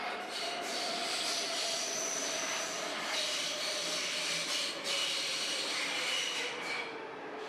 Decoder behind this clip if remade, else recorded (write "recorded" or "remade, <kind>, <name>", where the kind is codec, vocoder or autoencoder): recorded